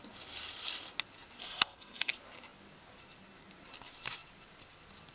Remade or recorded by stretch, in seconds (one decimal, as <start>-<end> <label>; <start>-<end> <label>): 0.0-1.4 recorded; 1.4-2.1 remade; 2.1-5.1 recorded